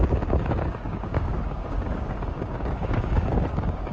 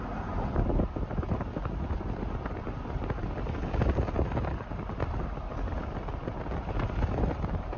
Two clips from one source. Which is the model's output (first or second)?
first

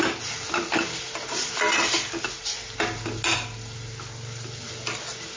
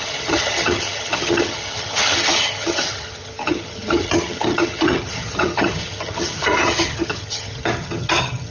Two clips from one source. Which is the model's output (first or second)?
second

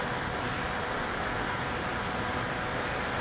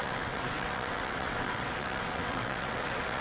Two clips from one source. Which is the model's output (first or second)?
second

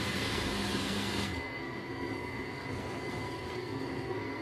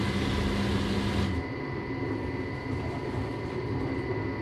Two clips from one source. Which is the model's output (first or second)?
first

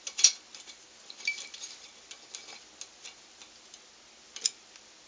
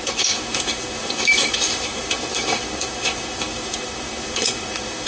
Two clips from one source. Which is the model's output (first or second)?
second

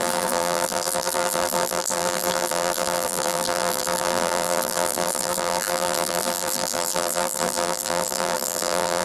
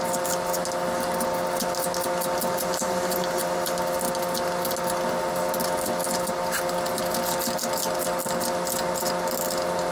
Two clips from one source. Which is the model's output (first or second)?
first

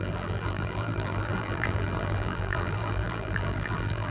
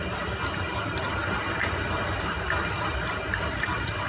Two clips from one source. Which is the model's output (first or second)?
first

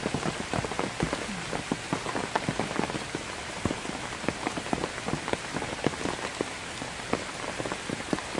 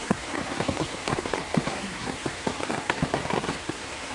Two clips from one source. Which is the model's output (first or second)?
second